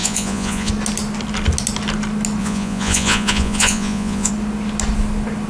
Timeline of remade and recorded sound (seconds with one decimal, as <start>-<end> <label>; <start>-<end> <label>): 0.0-0.7 remade; 0.7-2.4 recorded; 2.4-4.3 remade; 4.3-5.5 recorded